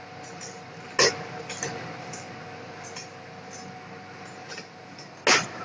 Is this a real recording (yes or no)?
yes